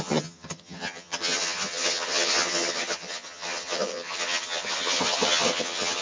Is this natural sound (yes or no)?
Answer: no